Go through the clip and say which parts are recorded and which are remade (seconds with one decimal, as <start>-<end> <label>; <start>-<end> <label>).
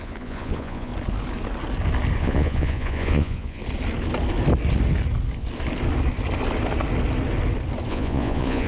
0.0-0.9 remade; 0.9-2.2 recorded; 2.2-3.6 remade; 3.6-7.9 recorded; 7.9-8.7 remade